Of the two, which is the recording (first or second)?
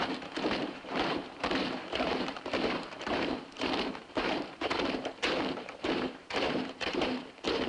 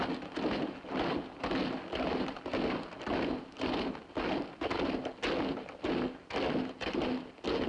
second